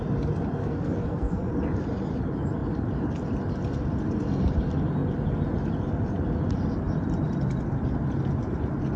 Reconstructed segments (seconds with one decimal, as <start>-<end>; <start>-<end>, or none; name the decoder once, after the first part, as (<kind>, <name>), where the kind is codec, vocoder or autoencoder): 0.6-1.5 (codec, SNAC)